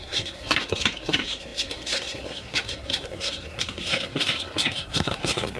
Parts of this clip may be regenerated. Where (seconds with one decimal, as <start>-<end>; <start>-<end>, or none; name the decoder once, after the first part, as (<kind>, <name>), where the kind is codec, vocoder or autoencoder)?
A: 0.0-5.6 (codec, SNAC)